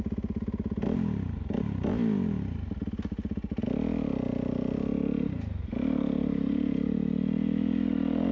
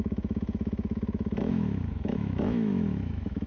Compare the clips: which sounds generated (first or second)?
second